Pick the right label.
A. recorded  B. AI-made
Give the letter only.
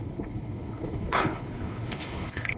B